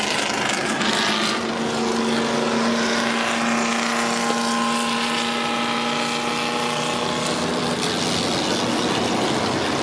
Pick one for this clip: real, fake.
real